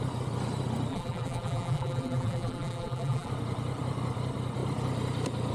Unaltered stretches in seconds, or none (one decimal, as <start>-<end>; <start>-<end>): 0.0-0.9; 3.3-5.5